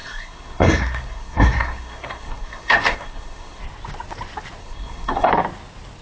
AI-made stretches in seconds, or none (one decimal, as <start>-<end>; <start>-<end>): 0.0-3.6; 4.6-5.3